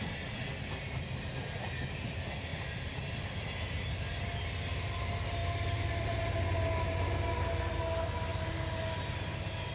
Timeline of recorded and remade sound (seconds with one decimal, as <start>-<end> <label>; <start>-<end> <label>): 0.0-9.7 recorded